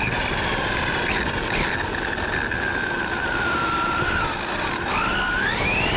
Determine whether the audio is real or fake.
fake